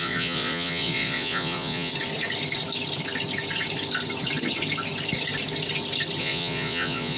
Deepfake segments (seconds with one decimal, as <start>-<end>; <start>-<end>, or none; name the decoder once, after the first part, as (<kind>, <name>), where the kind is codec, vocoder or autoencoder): 0.0-1.9 (vocoder, Vocos); 6.2-7.2